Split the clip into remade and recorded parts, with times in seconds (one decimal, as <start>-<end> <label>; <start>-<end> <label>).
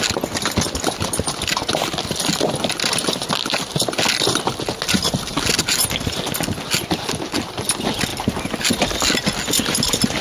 0.0-10.2 recorded